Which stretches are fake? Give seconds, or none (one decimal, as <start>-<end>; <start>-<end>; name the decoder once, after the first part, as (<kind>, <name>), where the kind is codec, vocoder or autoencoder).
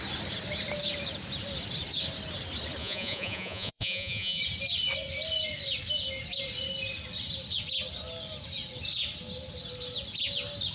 2.8-4.4 (vocoder, Vocos)